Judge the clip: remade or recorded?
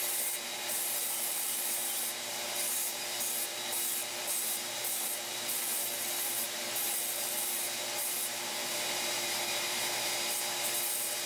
remade